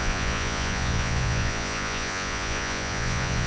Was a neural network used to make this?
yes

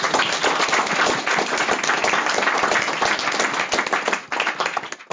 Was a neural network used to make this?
no